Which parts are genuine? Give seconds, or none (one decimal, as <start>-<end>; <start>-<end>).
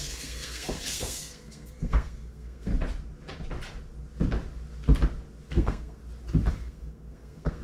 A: 2.7-5.5; 6.0-6.5